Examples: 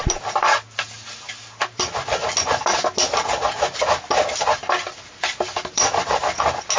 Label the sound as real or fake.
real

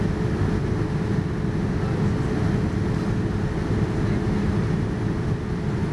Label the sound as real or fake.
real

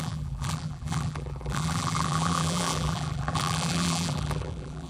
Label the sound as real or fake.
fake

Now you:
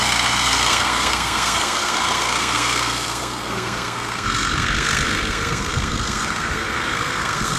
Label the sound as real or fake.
fake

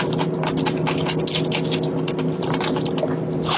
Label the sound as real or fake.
real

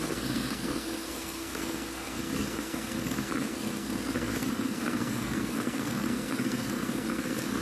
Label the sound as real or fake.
fake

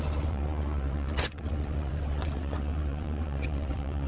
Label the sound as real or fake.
fake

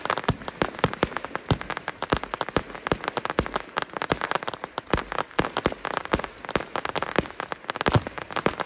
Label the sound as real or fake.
real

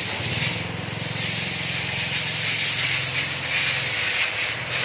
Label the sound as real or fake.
real